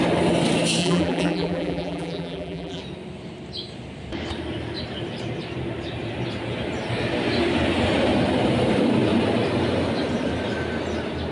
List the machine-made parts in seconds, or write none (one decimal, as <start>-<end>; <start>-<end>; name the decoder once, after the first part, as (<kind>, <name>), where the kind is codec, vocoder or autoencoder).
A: 0.8-2.8 (vocoder, BigVGAN v2)